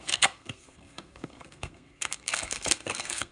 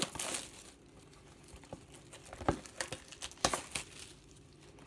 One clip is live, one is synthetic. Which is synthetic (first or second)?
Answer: first